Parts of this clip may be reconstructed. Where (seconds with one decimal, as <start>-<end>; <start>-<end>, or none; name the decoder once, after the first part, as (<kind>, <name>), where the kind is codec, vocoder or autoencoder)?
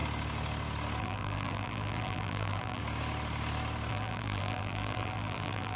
1.0-2.8 (vocoder, BigVGAN v2); 3.9-5.8